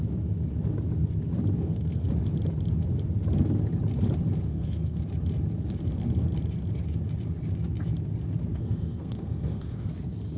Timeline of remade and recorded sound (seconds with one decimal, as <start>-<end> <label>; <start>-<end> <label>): 0.0-1.6 recorded; 1.6-2.1 remade; 2.1-4.5 recorded; 4.5-5.0 remade; 5.0-8.5 recorded; 8.5-9.9 remade; 9.9-10.4 recorded